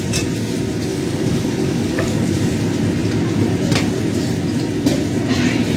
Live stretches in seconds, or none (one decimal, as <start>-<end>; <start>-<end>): 0.0-0.9; 2.4-5.8

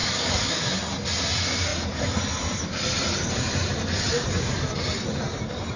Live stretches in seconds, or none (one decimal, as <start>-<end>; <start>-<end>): 0.8-5.8

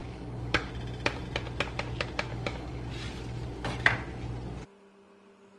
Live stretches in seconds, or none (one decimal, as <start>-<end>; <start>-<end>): 0.7-2.3; 2.9-5.6

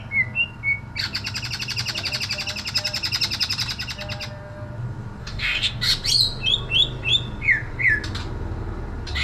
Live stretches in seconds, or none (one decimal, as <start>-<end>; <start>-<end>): 0.0-5.2; 5.8-9.2

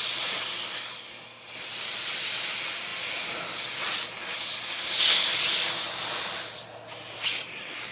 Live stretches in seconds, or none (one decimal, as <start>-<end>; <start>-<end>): 0.0-7.9

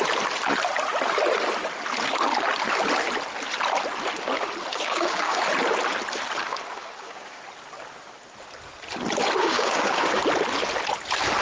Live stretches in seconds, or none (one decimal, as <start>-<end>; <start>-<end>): 0.0-4.7; 5.4-6.4; 7.4-9.4; 10.2-11.4

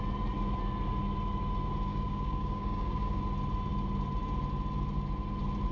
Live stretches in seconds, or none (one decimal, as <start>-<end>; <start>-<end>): 0.0-1.9; 3.2-5.7

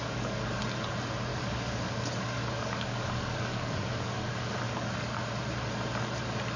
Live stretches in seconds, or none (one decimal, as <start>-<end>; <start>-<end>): 0.6-1.3; 5.3-6.6